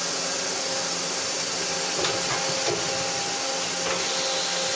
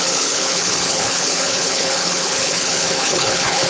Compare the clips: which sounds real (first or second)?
first